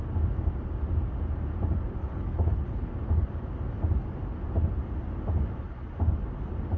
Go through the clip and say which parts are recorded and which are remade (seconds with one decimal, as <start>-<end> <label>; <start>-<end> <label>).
0.0-2.0 recorded; 2.0-2.9 remade; 2.9-6.8 recorded